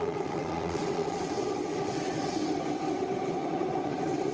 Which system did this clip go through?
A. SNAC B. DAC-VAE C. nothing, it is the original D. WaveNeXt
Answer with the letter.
D